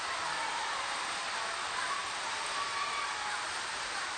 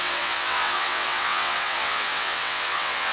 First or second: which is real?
first